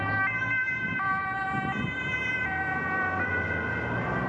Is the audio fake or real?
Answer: real